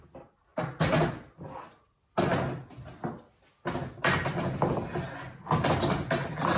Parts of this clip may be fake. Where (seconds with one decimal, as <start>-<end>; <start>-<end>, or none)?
none